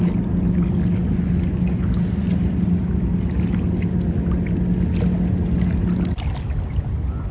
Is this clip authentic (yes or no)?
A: yes